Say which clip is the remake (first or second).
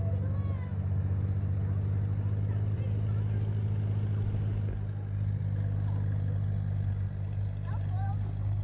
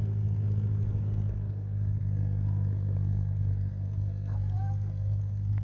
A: second